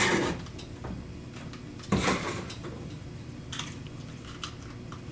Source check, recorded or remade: recorded